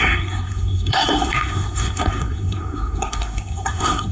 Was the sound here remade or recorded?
remade